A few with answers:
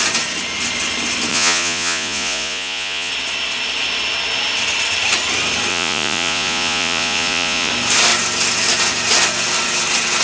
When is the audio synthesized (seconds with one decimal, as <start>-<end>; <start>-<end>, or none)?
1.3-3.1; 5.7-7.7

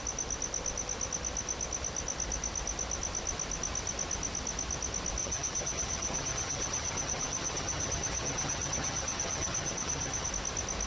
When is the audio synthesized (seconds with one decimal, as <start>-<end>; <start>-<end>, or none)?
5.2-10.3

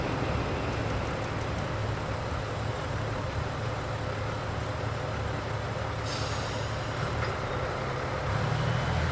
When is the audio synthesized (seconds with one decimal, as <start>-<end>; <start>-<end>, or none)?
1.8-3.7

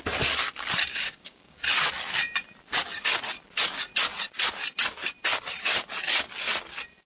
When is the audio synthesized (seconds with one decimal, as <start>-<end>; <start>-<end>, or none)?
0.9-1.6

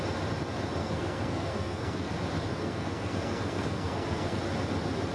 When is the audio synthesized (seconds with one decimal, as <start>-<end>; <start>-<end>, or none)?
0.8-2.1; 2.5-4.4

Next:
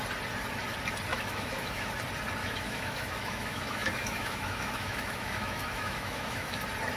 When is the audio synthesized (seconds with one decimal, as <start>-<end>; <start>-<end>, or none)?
1.1-1.9; 2.4-6.6

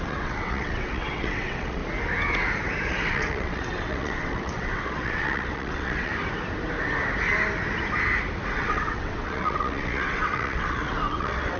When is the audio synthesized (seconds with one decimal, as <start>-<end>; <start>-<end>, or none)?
0.0-1.8; 2.9-6.1; 8.5-11.6